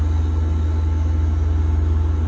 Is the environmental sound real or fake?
real